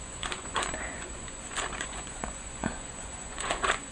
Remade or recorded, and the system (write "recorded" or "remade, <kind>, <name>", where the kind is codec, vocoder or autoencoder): remade, vocoder, Vocos